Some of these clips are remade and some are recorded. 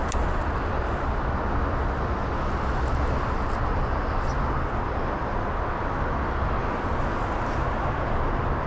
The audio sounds recorded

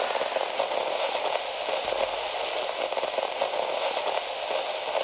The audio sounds recorded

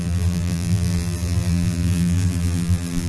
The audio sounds remade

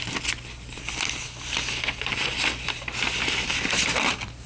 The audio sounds recorded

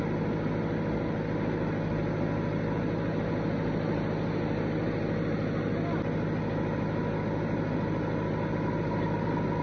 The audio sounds recorded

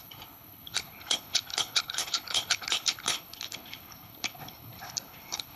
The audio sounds remade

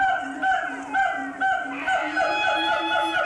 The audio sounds recorded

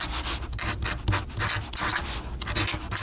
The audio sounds recorded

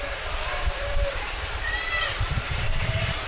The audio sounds remade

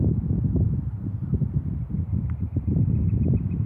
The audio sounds recorded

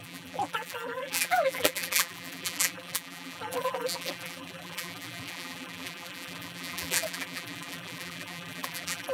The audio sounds remade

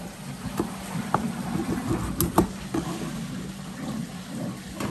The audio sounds recorded